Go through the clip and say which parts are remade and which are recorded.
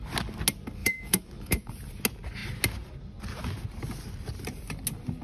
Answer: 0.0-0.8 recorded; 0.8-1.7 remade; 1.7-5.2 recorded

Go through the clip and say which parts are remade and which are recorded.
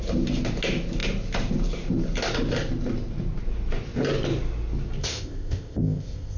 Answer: 0.0-5.0 recorded; 5.0-6.4 remade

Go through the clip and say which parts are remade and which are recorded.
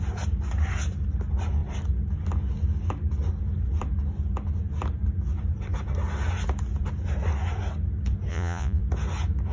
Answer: 0.0-8.3 recorded; 8.3-8.8 remade; 8.8-9.5 recorded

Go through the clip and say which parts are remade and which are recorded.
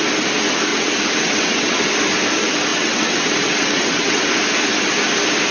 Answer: 0.0-0.7 recorded; 0.7-1.9 remade; 1.9-2.7 recorded; 2.7-4.3 remade; 4.3-5.5 recorded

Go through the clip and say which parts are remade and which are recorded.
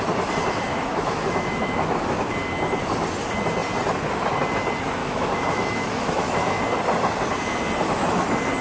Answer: 0.0-0.7 recorded; 0.7-2.3 remade; 2.3-5.0 recorded; 5.0-6.6 remade; 6.6-8.6 recorded